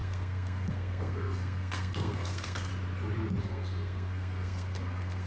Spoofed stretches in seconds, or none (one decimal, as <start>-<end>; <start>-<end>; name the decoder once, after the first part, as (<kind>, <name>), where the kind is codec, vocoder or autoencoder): 0.0-2.7 (codec, SNAC); 3.4-5.3